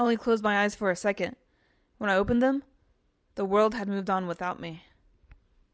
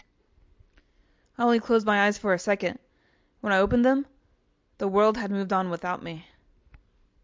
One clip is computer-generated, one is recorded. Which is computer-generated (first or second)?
first